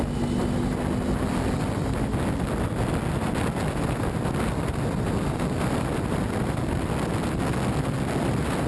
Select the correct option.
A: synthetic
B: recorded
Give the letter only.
B